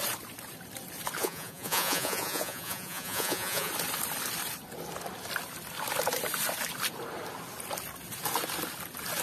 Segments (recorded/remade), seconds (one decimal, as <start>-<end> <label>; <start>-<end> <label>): 0.0-1.2 recorded; 1.2-3.7 remade; 3.7-9.2 recorded